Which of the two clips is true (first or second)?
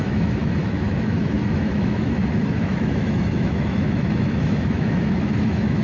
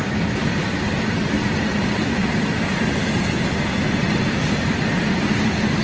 second